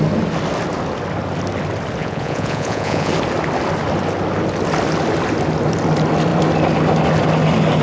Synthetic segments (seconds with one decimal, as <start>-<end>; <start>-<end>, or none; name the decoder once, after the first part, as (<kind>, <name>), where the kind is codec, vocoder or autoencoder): 2.0-3.1 (vocoder, Vocos)